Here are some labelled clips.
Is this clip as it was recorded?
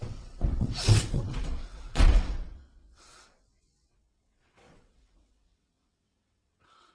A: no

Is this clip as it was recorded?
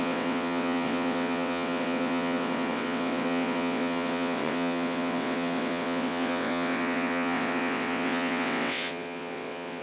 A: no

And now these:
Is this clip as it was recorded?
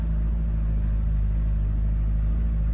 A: yes